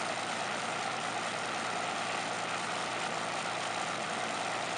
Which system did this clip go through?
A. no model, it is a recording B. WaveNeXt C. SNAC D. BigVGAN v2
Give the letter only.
A